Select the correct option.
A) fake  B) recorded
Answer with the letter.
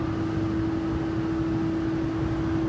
B